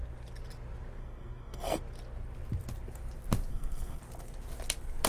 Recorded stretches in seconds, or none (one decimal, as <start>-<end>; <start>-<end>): 0.0-1.0; 1.8-3.5; 4.0-5.1